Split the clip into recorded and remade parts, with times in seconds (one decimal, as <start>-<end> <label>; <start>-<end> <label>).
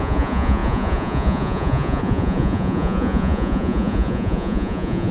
0.0-5.1 remade